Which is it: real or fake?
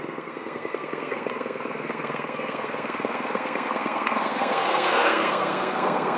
fake